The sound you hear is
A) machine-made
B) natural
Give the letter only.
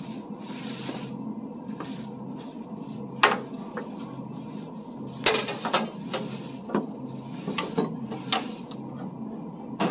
B